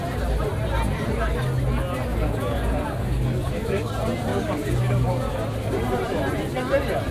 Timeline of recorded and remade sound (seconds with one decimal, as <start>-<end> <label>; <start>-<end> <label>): 0.0-2.1 recorded; 2.1-3.9 remade; 3.9-4.3 recorded; 4.3-5.3 remade; 5.3-7.1 recorded